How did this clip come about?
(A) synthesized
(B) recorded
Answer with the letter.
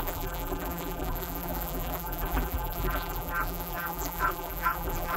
A